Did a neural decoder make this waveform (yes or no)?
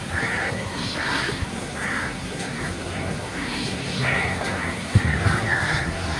yes